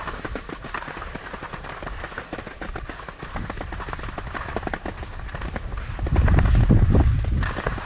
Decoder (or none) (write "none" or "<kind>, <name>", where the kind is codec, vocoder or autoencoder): none